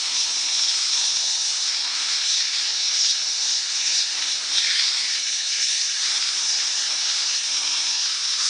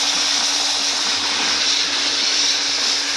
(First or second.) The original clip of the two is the second